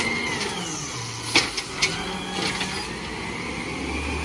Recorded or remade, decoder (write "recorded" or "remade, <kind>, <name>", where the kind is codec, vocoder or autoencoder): recorded